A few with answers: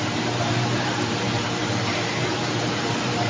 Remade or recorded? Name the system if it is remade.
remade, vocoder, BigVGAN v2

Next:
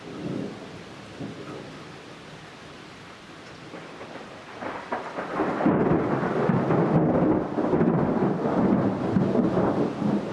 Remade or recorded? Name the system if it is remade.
recorded